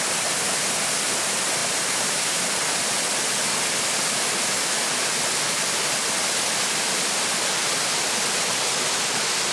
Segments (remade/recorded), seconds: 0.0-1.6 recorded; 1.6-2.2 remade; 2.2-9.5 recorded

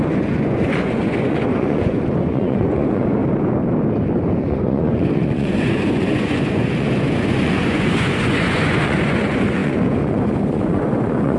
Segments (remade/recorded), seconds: 0.0-3.2 remade; 3.2-4.4 recorded; 4.4-11.4 remade